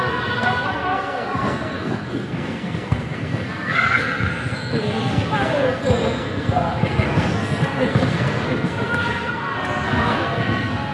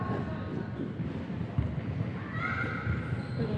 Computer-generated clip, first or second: first